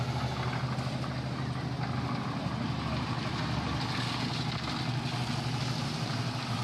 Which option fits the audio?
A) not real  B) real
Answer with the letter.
B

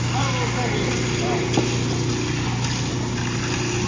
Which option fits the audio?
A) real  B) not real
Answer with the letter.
A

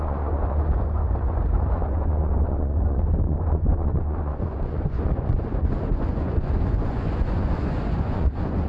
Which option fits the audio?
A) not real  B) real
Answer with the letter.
A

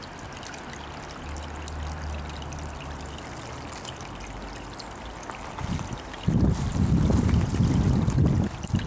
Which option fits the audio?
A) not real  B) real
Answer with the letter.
B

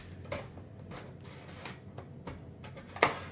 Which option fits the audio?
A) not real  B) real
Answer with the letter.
B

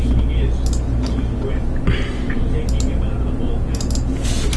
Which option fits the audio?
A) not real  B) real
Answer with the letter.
B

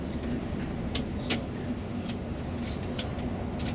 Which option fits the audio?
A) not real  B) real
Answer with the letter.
B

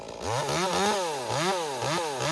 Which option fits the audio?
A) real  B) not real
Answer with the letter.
A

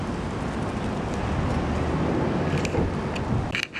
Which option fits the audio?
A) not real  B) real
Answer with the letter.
B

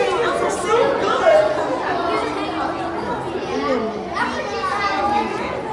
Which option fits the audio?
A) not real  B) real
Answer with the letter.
B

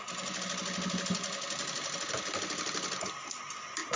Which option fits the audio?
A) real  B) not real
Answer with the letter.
A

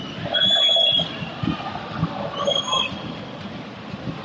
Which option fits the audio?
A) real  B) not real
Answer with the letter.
A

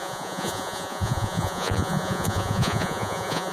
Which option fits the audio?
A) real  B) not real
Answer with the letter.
B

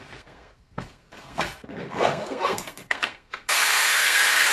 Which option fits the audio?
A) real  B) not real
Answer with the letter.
B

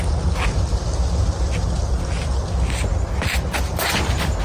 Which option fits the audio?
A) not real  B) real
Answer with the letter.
B